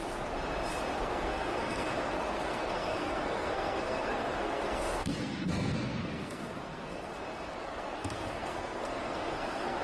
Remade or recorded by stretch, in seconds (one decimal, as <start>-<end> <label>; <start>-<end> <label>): 0.0-1.0 recorded; 1.0-7.1 remade; 7.1-7.6 recorded; 7.6-9.8 remade